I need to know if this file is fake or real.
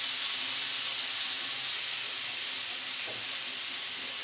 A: real